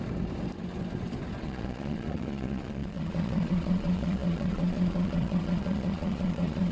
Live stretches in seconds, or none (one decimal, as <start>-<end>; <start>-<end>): 0.0-1.4